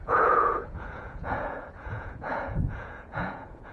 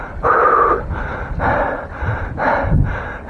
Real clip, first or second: second